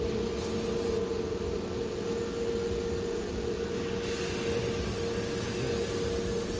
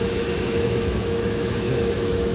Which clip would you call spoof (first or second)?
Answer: second